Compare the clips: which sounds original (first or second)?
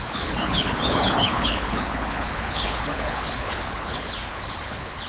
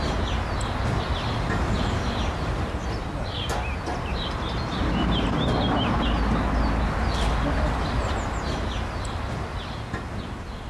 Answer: second